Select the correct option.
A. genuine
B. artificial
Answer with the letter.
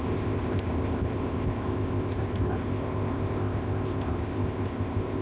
B